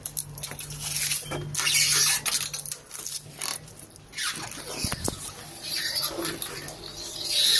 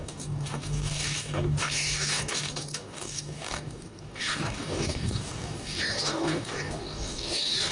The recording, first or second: first